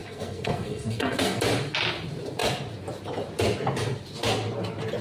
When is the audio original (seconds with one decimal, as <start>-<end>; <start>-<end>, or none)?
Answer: 1.4-5.0

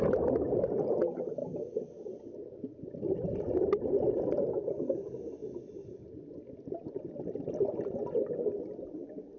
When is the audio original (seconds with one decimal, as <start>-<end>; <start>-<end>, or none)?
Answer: 0.0-9.4

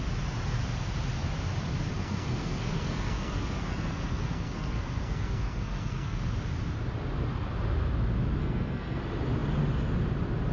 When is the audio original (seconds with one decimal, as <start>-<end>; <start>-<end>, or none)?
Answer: 0.0-1.9; 6.2-8.4; 9.0-10.5

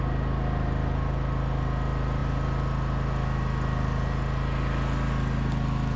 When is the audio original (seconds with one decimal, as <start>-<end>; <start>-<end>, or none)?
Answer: 0.0-6.0

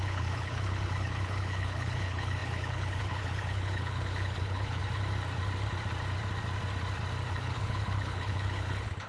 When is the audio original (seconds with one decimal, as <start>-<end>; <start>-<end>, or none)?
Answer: 4.8-7.3

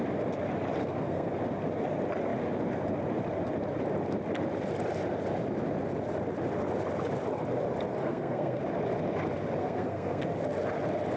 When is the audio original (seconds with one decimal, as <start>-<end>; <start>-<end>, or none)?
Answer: 0.0-0.8; 1.3-8.0; 8.6-9.6; 10.2-11.2